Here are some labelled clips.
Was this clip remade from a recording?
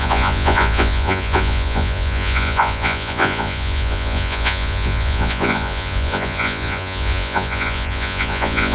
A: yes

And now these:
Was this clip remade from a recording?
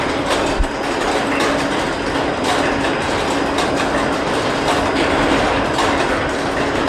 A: no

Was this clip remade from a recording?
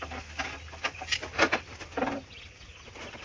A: no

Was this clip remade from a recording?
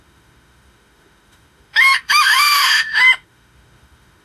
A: yes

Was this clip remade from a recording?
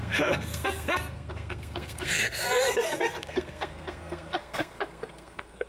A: yes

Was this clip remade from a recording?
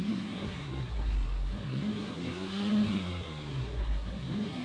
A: yes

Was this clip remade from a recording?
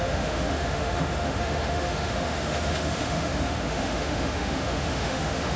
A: yes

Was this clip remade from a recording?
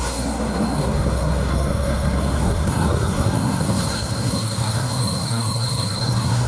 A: yes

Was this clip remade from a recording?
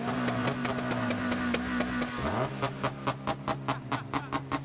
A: no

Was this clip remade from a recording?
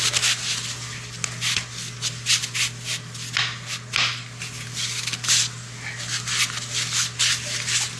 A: no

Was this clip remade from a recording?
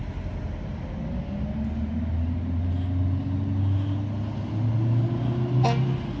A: no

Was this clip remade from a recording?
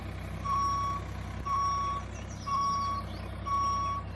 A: no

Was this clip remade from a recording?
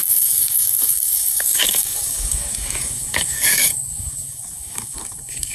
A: yes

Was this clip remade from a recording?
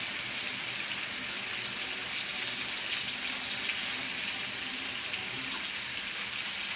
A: no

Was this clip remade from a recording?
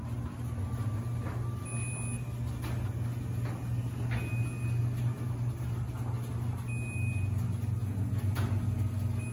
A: no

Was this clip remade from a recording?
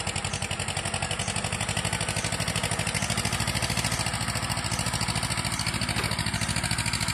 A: no